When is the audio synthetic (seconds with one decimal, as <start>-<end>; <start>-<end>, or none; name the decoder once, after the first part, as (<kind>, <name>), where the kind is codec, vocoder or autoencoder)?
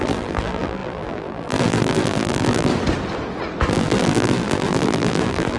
0.0-2.7 (vocoder, BigVGAN v2); 3.7-5.6